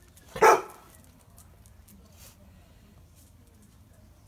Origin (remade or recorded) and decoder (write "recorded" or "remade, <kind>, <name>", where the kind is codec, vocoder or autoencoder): recorded